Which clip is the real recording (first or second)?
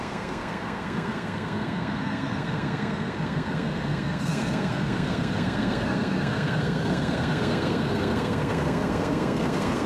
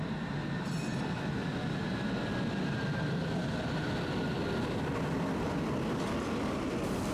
second